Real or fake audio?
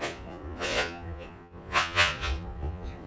fake